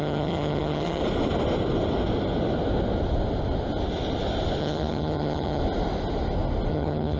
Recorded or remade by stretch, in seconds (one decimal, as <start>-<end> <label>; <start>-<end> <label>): 0.0-1.0 remade; 1.0-4.6 recorded; 4.6-5.6 remade; 5.6-6.7 recorded; 6.7-7.2 remade